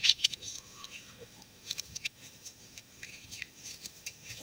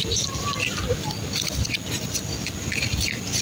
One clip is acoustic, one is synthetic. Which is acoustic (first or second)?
second